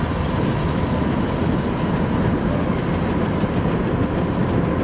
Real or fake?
real